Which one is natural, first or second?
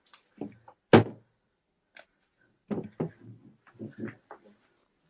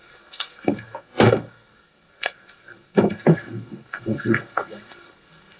first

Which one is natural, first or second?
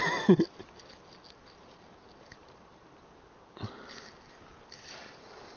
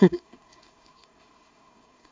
first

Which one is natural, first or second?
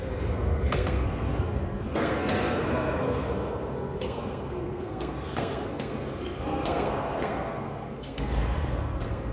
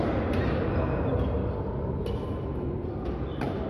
second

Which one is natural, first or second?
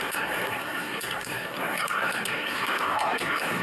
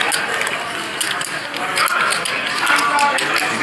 second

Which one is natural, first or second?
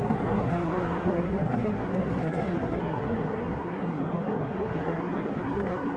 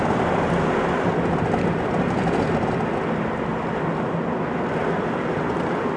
second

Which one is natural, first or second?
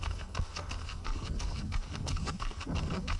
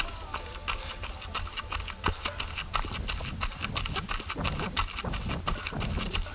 second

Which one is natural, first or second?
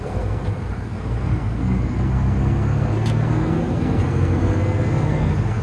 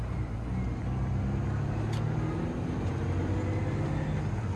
second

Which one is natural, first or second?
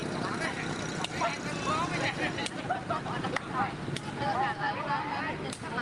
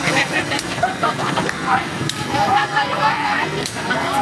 first